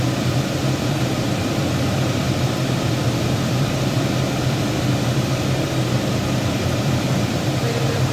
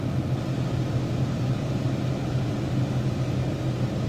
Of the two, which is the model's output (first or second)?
first